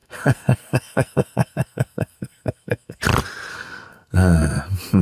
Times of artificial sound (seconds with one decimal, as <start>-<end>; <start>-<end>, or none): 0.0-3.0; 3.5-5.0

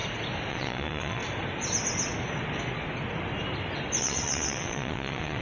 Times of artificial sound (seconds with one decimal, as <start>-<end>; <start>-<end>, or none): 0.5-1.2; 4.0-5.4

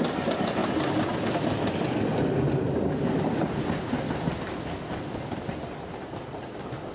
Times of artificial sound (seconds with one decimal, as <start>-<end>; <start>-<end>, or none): none

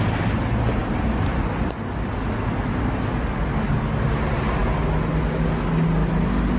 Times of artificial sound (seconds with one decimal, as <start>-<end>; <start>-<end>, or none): none

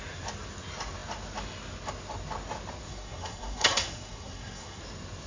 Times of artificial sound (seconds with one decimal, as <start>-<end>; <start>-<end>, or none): 2.9-4.8